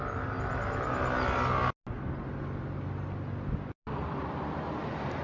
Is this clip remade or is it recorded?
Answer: recorded